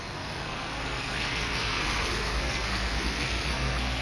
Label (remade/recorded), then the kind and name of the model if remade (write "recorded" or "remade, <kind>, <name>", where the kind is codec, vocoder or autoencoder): remade, codec, SNAC